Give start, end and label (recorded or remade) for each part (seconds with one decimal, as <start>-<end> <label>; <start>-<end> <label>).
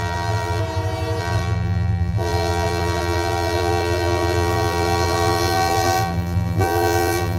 0.0-0.6 remade; 0.6-1.2 recorded; 1.2-7.4 remade